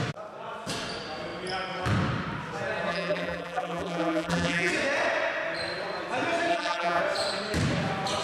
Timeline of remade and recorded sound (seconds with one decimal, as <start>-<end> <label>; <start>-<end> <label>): 0.0-2.9 recorded; 2.9-4.7 remade; 4.7-6.5 recorded; 6.5-7.0 remade; 7.0-8.2 recorded